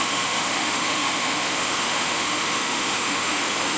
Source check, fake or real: fake